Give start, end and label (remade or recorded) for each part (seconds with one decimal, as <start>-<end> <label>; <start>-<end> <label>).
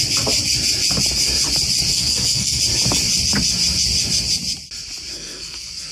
0.0-1.9 recorded; 1.9-2.6 remade; 2.6-5.1 recorded; 5.1-5.9 remade